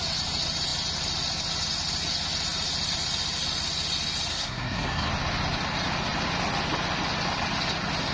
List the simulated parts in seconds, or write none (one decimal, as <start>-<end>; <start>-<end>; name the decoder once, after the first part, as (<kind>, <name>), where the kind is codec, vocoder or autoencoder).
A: 4.3-5.1 (codec, SNAC)